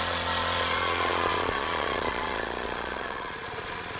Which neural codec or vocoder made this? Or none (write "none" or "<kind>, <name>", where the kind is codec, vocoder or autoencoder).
vocoder, Vocos